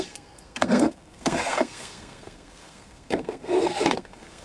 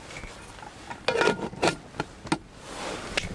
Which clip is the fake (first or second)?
first